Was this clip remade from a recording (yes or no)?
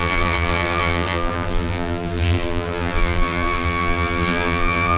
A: yes